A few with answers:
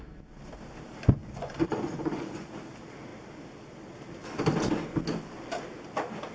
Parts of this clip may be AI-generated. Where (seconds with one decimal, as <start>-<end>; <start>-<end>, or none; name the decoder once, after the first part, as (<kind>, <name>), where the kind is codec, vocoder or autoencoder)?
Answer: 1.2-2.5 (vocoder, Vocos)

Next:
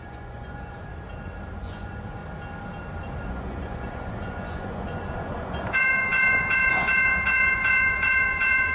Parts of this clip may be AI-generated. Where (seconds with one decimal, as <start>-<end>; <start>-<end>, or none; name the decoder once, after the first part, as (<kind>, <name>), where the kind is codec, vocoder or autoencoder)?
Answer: 0.0-0.9 (vocoder, Vocos); 1.6-2.2; 3.3-8.7

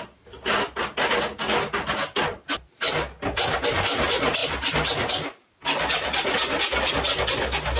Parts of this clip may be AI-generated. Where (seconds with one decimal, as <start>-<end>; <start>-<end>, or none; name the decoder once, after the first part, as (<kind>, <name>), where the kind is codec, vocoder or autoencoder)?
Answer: none

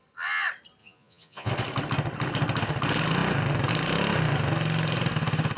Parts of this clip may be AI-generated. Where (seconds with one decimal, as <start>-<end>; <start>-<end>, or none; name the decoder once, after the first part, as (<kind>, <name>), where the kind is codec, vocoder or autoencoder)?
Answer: 0.8-1.5 (vocoder, Vocos)

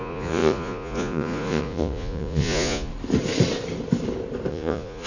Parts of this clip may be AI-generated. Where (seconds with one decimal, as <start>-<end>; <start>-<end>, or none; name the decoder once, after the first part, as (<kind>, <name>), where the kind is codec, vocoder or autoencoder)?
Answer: 0.0-2.9 (vocoder, Vocos); 4.5-5.1

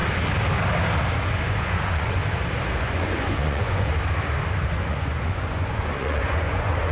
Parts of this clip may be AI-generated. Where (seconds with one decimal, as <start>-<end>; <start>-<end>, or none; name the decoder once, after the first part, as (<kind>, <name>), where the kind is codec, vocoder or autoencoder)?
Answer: 1.3-2.2 (vocoder, Vocos); 2.8-3.9; 4.6-6.9

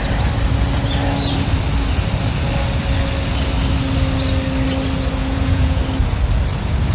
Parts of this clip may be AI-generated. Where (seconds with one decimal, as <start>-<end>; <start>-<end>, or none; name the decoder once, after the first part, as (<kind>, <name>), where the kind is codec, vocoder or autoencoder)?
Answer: 5.2-5.8 (vocoder, Vocos)

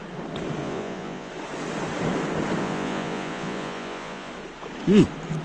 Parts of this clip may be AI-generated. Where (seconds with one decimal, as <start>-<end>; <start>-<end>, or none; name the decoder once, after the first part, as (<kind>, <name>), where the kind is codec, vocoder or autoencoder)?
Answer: 0.6-1.3 (vocoder, Vocos); 2.6-4.3